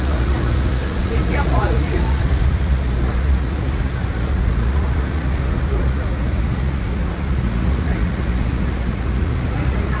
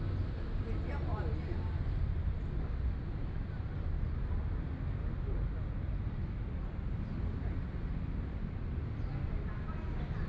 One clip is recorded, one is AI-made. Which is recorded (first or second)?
second